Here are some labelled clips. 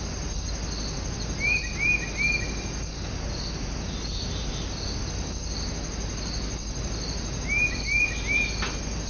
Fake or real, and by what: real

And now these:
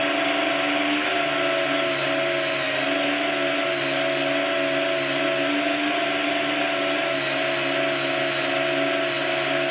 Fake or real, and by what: real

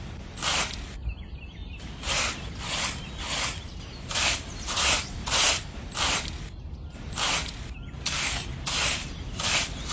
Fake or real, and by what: real